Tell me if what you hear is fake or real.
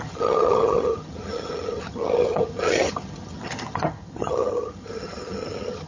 fake